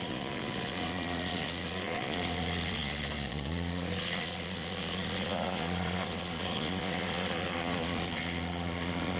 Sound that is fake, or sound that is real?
fake